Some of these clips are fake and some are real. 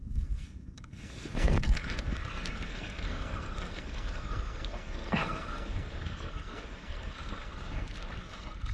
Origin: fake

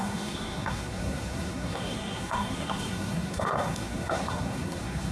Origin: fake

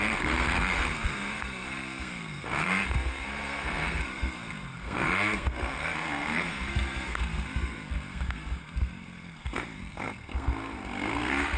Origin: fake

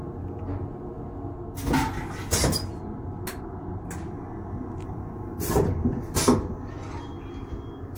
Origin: real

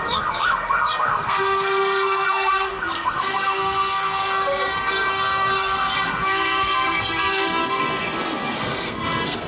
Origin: fake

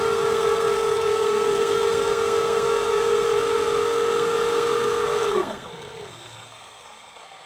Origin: fake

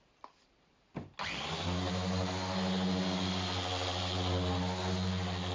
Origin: real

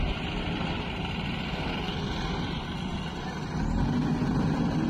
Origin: real